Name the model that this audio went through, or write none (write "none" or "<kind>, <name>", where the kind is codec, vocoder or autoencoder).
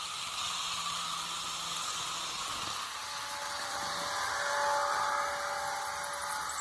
none